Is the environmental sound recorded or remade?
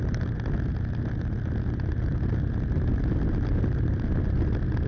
recorded